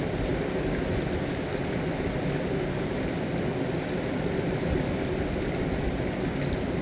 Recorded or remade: recorded